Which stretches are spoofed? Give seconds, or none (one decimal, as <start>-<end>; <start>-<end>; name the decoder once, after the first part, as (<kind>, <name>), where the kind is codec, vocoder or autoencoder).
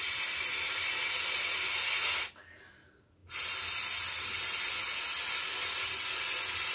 none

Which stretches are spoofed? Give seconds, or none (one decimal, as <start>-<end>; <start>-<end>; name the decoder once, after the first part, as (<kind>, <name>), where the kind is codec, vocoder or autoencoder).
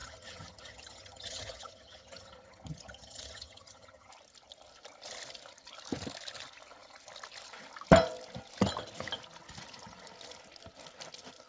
0.0-4.1 (vocoder, HiFi-GAN)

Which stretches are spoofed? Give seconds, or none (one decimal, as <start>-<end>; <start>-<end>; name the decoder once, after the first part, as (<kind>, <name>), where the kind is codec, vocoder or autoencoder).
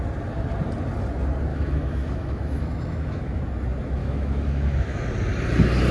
1.5-3.4 (autoencoder, DAC-VAE); 4.0-5.0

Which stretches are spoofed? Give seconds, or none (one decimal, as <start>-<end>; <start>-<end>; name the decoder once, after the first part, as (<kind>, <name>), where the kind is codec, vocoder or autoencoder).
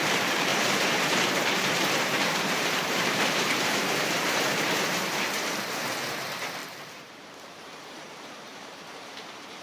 0.0-9.6 (vocoder, BigVGAN v2)